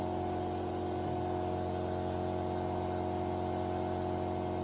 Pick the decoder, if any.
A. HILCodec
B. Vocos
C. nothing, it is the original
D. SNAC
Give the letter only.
C